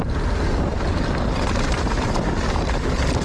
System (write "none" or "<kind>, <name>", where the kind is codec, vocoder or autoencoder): none